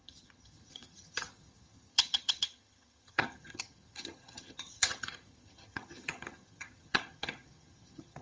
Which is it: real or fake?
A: fake